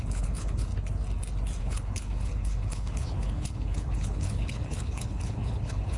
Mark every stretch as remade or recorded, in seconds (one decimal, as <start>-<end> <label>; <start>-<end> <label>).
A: 0.0-0.7 remade; 0.7-1.6 recorded; 1.6-6.0 remade